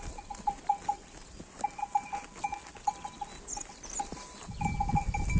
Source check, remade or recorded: recorded